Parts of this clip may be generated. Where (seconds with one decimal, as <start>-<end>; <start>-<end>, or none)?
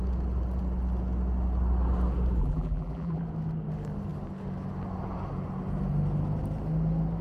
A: 2.4-3.2